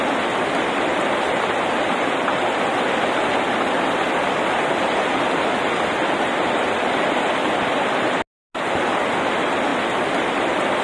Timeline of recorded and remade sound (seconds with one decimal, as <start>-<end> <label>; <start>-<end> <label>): 0.0-9.7 recorded; 9.7-10.8 remade